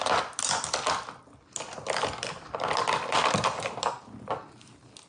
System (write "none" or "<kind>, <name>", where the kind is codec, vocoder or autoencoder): none